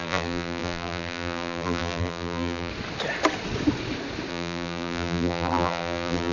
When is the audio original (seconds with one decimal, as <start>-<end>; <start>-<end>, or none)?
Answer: 2.7-4.3